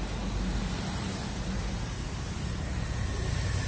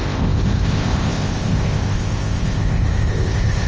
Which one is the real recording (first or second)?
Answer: first